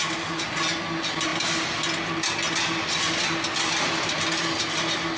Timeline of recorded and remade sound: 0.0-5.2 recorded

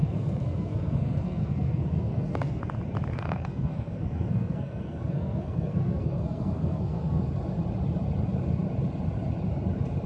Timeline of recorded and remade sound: 0.0-2.6 remade; 2.6-3.1 recorded; 3.1-7.2 remade; 7.2-10.1 recorded

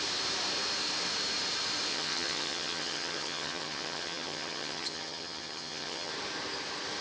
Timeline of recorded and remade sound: 0.0-1.9 recorded; 1.9-6.1 remade; 6.1-7.0 recorded

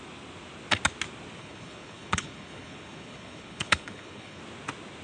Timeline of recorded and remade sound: 0.0-1.4 recorded; 1.4-4.4 remade; 4.4-5.0 recorded

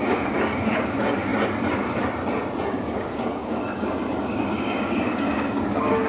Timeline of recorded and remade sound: 0.0-1.3 remade; 1.3-2.7 recorded; 2.7-3.6 remade; 3.6-4.3 recorded; 4.3-6.1 remade

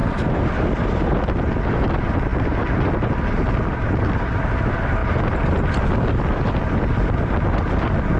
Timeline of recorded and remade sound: 0.0-8.2 recorded

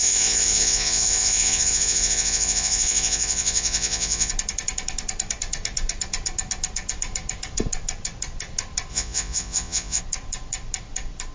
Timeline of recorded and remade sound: 0.0-4.3 remade; 4.3-8.9 recorded; 8.9-10.0 remade; 10.0-11.3 recorded

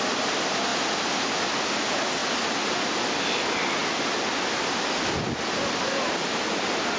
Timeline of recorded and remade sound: 0.0-7.0 recorded